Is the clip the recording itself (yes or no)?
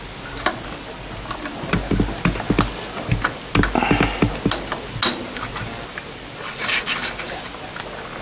yes